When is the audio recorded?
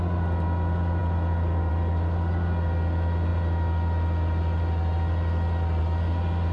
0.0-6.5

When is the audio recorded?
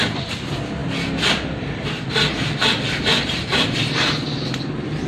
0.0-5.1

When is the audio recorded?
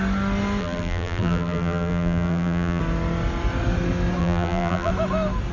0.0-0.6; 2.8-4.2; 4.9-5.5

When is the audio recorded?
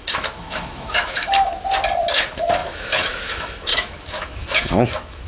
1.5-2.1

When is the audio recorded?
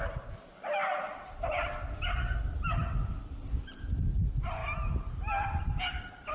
0.0-0.8; 2.4-6.3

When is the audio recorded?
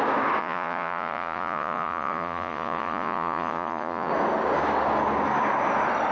0.0-0.4; 4.1-6.1